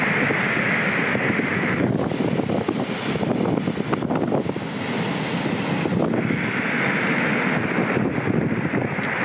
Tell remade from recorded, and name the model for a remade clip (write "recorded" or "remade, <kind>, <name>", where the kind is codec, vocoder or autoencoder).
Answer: recorded